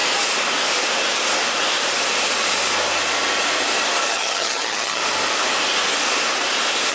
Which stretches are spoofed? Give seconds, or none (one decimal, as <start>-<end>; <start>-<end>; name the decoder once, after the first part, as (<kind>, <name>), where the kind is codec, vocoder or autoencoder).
4.1-5.0 (vocoder, HiFi-GAN)